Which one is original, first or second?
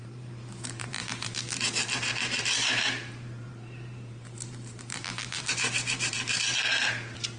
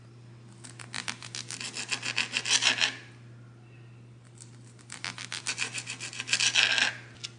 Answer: second